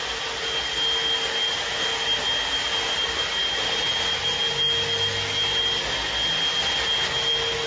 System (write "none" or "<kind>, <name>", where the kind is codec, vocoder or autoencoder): none